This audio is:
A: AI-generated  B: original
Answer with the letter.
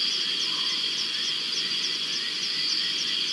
A